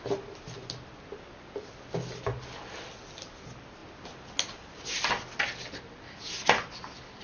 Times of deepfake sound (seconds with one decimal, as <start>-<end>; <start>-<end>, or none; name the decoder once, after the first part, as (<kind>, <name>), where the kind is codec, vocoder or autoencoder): none